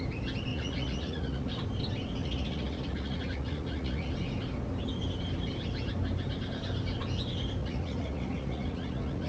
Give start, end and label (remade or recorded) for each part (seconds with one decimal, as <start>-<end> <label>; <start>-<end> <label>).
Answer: 0.0-0.5 recorded; 0.5-1.5 remade; 1.5-2.2 recorded; 2.2-4.1 remade; 4.1-7.6 recorded; 7.6-9.3 remade